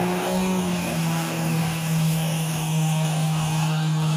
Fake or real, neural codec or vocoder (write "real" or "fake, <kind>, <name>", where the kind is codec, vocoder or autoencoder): fake, codec, DAC